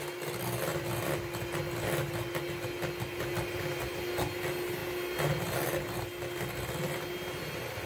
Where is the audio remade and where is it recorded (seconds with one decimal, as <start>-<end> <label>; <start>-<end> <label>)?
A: 0.0-7.9 recorded